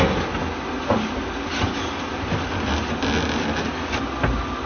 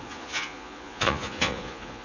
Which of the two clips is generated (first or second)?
second